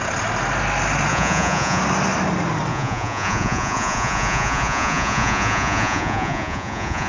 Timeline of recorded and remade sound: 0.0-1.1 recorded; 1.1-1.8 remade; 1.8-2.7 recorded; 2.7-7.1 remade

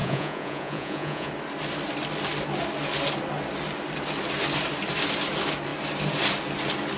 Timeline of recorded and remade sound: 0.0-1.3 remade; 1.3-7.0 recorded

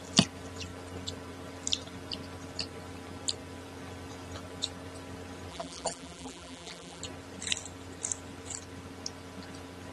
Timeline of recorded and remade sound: 0.0-5.5 recorded; 5.5-7.0 remade; 7.0-9.9 recorded

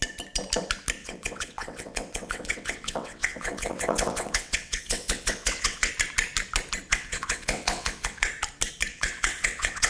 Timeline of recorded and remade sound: 0.0-1.0 recorded; 1.0-5.9 remade; 5.9-6.9 recorded; 6.9-8.3 remade; 8.3-8.9 recorded; 8.9-9.9 remade

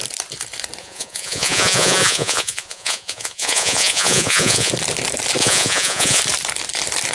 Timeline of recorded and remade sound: 0.0-0.8 recorded; 0.8-4.7 remade; 4.7-5.4 recorded; 5.4-6.2 remade; 6.2-7.1 recorded

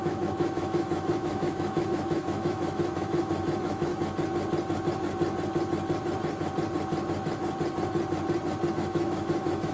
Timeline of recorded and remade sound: 0.0-3.9 remade; 3.9-8.7 recorded; 8.7-9.7 remade

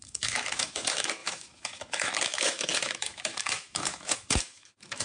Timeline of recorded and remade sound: 0.0-5.0 remade